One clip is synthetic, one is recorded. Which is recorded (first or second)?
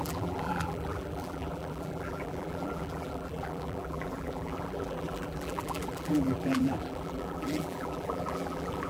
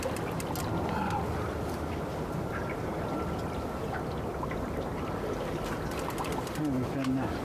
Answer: second